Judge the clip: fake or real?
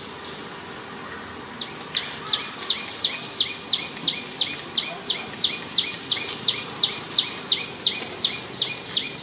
real